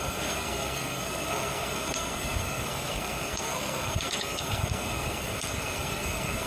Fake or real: fake